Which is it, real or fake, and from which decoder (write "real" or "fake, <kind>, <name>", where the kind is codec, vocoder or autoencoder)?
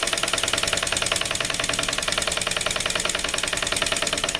real